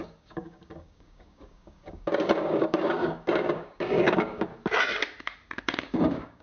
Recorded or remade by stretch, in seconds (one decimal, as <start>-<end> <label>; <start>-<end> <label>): 0.0-4.5 remade; 4.5-5.6 recorded; 5.6-6.4 remade